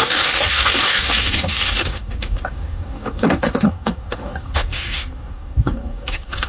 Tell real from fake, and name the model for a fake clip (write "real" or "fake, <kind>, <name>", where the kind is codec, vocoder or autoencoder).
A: fake, codec, DAC